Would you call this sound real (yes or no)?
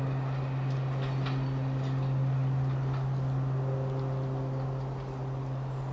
yes